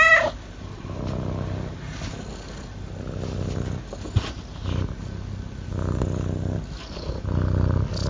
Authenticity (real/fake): real